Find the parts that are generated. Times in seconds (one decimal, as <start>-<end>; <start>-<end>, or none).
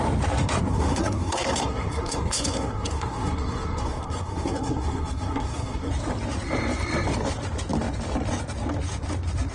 0.7-5.9